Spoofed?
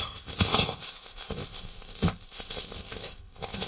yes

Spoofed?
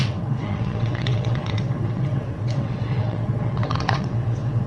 yes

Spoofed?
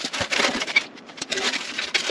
yes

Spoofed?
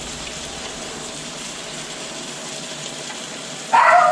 no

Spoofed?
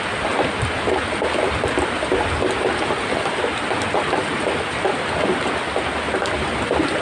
no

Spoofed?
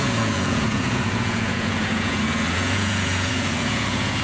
yes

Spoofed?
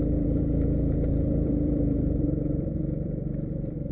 yes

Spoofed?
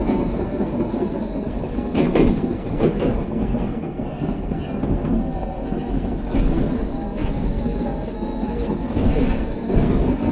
yes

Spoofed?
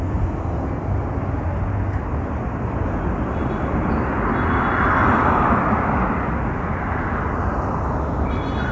no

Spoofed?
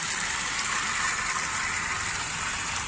yes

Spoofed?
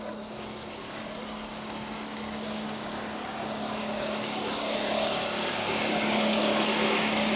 yes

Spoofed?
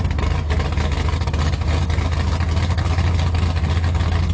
no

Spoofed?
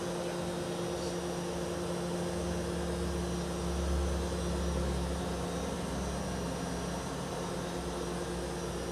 no